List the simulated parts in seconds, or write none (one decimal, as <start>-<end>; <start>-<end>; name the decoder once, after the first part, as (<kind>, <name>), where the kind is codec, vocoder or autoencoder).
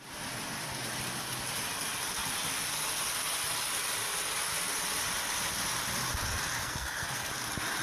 6.6-7.3 (codec, SNAC)